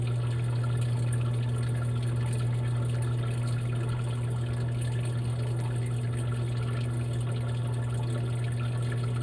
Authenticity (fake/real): real